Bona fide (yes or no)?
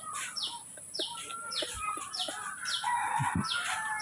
no